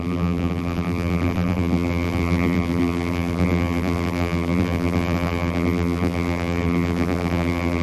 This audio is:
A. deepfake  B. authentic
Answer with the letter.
A